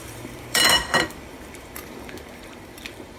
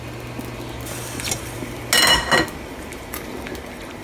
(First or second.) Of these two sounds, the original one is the second